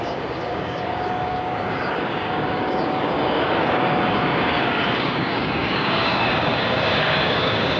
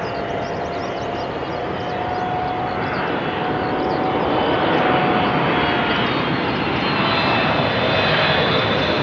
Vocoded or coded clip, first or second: first